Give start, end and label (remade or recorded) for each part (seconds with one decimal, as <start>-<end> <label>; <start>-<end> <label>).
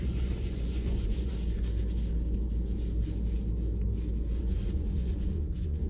0.0-1.3 remade; 1.3-4.4 recorded; 4.4-5.9 remade